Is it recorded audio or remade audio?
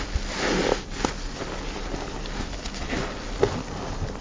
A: recorded